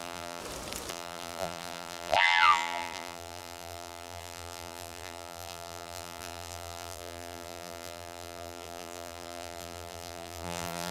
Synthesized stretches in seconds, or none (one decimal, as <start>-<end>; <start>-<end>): 0.0-0.4; 0.9-10.9

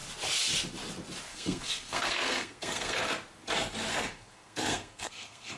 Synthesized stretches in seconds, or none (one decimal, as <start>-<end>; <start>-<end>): 1.3-3.1; 3.9-5.6

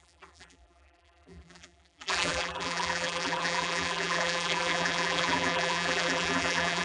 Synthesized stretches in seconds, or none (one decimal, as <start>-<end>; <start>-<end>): 0.0-6.8

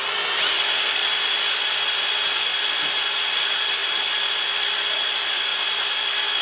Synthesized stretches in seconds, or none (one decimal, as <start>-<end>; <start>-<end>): 1.0-2.1; 3.8-4.8; 5.5-6.4

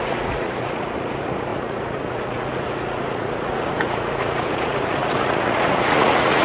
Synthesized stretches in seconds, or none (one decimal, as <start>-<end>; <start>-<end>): 0.0-6.4

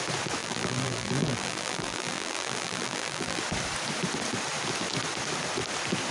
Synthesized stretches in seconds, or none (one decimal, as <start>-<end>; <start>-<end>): 0.4-3.4

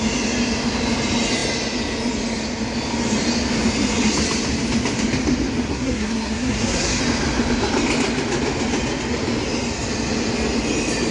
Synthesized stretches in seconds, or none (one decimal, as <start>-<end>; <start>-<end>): 5.7-7.0